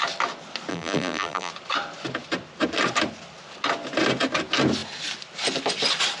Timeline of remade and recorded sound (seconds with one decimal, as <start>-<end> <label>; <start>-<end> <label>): 0.0-0.7 recorded; 0.7-1.5 remade; 1.5-6.2 recorded